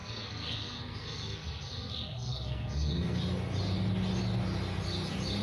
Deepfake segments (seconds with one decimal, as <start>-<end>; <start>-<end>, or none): 0.0-3.2